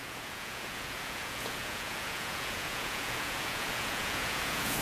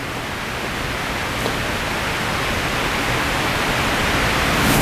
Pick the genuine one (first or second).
second